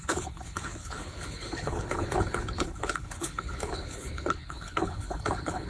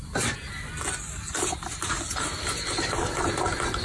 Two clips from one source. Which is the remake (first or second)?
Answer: first